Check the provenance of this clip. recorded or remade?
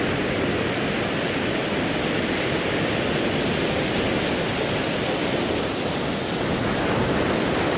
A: recorded